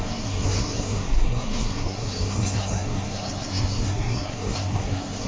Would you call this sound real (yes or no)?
no